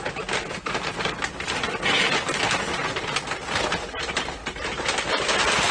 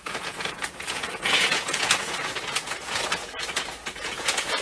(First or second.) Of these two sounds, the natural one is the first